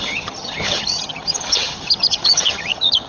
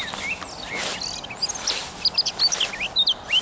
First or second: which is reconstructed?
first